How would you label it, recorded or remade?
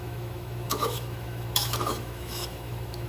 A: remade